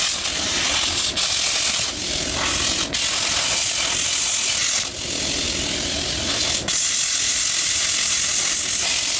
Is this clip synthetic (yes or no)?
no